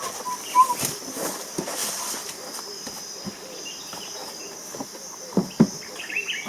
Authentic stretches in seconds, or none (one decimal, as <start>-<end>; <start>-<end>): 0.0-6.5